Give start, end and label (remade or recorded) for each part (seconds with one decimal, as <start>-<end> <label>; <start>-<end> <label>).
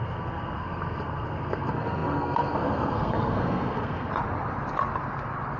0.0-4.1 remade; 4.1-5.6 recorded